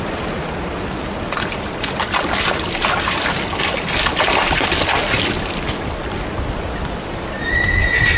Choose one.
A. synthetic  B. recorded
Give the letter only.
B